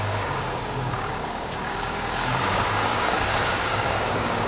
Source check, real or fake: fake